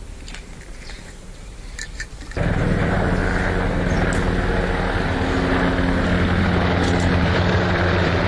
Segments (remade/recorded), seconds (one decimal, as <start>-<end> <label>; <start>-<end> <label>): 0.0-3.2 remade; 3.2-7.2 recorded; 7.2-8.3 remade